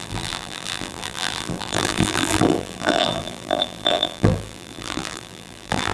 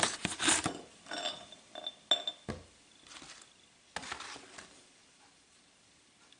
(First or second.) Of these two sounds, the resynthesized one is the first